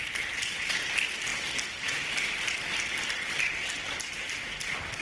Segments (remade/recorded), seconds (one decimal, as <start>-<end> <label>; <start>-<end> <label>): 0.0-5.0 recorded